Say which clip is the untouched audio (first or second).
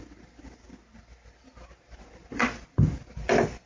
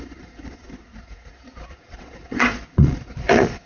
first